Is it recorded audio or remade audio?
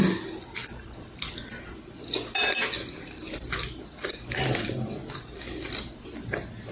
recorded